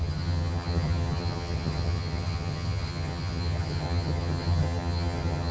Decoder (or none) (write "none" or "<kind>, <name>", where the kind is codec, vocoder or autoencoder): vocoder, HiFi-GAN